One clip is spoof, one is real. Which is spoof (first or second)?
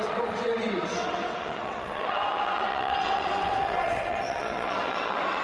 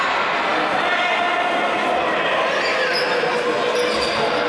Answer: first